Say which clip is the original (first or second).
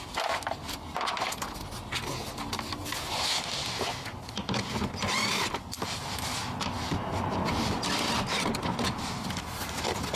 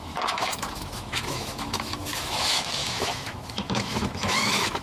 first